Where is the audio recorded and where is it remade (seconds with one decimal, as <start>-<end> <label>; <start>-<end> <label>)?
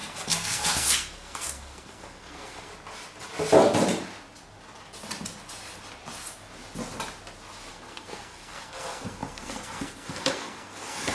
0.0-2.7 remade; 2.7-7.7 recorded; 7.7-11.1 remade